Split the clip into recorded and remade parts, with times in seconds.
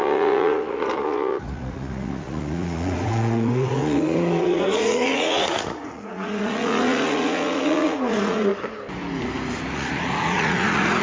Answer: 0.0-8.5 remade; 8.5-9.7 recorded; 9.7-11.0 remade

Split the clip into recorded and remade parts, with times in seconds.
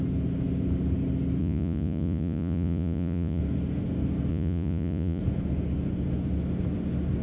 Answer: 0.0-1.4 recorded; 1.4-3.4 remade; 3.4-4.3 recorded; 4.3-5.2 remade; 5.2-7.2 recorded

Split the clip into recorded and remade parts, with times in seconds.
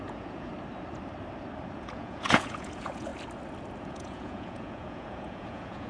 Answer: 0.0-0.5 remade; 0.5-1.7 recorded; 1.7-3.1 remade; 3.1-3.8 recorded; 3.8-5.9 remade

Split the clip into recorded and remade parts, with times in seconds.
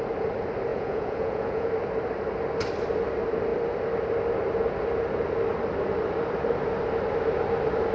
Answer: 0.0-0.7 recorded; 0.7-1.7 remade; 1.7-7.9 recorded